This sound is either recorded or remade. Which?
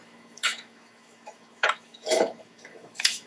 remade